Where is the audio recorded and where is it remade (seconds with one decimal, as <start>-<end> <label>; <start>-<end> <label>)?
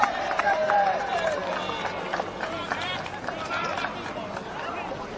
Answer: 0.0-1.4 remade; 1.4-4.5 recorded; 4.5-5.2 remade